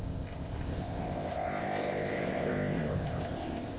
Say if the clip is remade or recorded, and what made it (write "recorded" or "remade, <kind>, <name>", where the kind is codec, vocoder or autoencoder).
remade, codec, ZipCodec